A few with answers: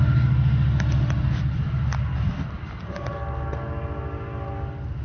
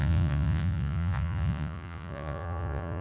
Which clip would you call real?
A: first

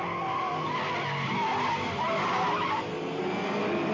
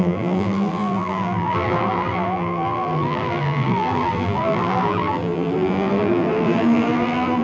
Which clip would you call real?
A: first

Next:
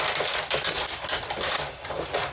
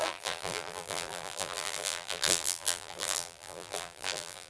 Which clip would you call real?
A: first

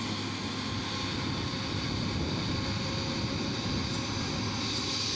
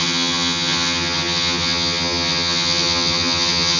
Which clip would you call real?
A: first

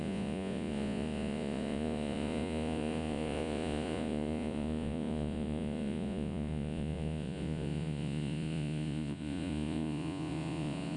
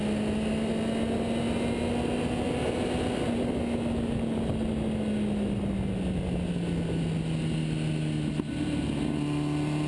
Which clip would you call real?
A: second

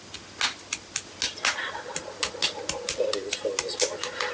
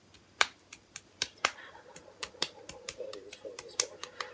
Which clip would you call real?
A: first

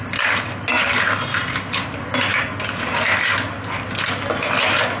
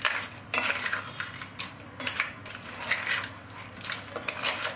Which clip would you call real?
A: first